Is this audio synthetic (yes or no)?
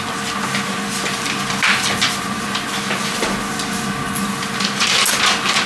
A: no